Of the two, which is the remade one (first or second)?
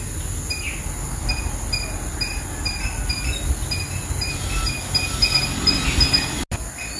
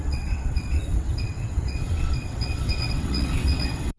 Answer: second